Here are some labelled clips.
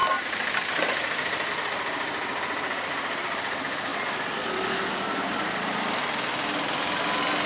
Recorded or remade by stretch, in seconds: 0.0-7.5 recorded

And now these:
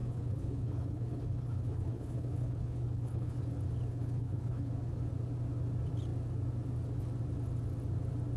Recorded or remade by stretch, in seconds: 0.0-3.4 remade; 3.4-3.9 recorded; 3.9-4.7 remade; 4.7-8.4 recorded

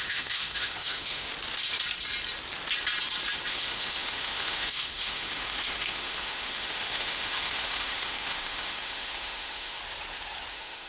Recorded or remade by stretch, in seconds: 0.0-1.3 remade; 1.3-3.5 recorded; 3.5-9.8 remade; 9.8-10.5 recorded; 10.5-10.9 remade

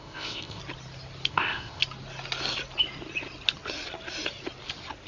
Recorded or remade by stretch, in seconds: 0.0-0.6 remade; 0.6-1.3 recorded; 1.3-1.8 remade; 1.8-5.1 recorded

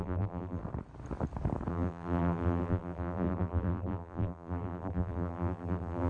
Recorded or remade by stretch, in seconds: 0.0-0.6 remade; 0.6-1.7 recorded; 1.7-6.1 remade

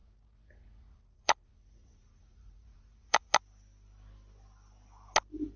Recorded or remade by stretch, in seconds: 0.0-3.4 remade; 3.4-5.6 recorded